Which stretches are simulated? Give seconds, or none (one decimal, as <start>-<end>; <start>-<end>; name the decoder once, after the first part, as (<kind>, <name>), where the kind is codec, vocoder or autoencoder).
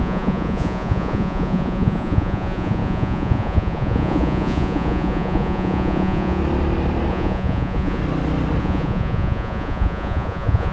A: 0.0-6.4 (vocoder, Vocos); 7.1-8.0; 8.6-10.7